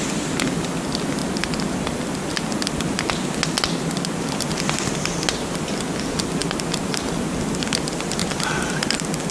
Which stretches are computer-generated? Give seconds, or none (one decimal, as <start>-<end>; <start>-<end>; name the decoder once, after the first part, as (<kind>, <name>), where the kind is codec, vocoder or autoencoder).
none